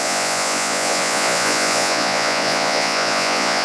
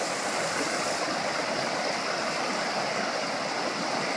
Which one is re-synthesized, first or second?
first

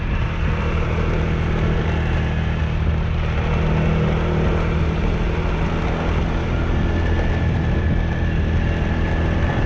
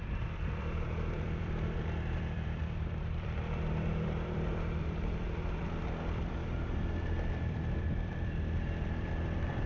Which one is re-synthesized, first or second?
second